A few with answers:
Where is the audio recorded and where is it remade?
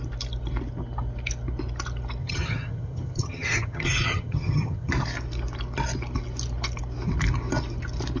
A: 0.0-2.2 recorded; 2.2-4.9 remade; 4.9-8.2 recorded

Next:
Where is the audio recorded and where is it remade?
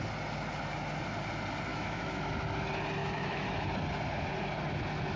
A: 0.0-1.7 recorded; 1.7-2.3 remade; 2.3-3.0 recorded; 3.0-3.7 remade; 3.7-5.2 recorded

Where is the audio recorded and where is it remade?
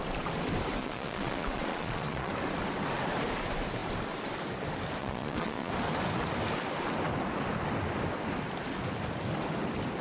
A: 0.0-0.8 recorded; 0.8-2.3 remade; 2.3-5.0 recorded; 5.0-5.7 remade; 5.7-10.0 recorded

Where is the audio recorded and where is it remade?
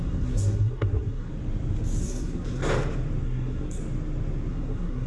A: 0.0-1.3 remade; 1.3-2.0 recorded; 2.0-2.6 remade; 2.6-3.2 recorded; 3.2-3.8 remade; 3.8-4.5 recorded; 4.5-5.1 remade